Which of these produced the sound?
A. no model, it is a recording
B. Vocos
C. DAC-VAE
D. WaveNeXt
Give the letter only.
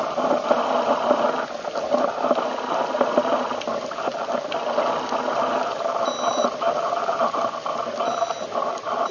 A